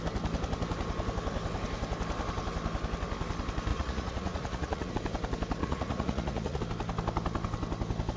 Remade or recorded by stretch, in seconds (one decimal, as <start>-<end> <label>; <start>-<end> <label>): 0.0-3.7 recorded; 3.7-4.9 remade; 4.9-5.6 recorded; 5.6-6.6 remade; 6.6-8.2 recorded